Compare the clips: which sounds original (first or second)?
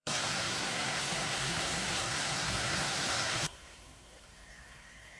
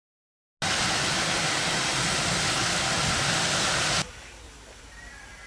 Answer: second